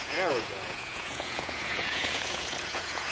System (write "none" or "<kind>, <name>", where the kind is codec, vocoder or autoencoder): vocoder, Vocos